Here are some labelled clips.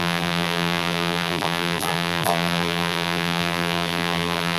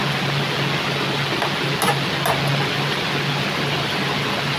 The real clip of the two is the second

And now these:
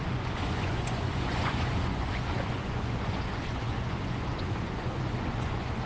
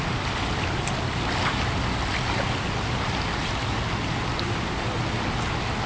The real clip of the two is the second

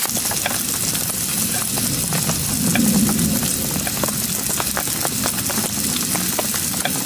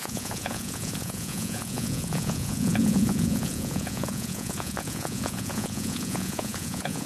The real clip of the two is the first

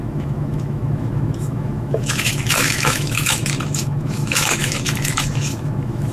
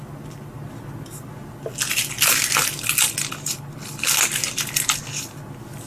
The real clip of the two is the second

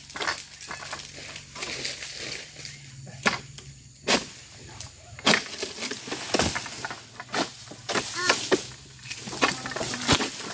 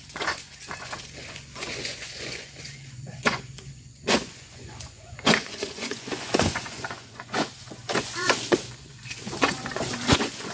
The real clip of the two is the first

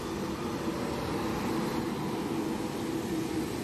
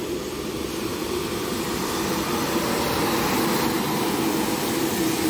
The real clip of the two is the first